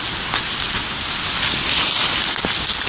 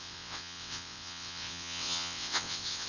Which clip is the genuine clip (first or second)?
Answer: first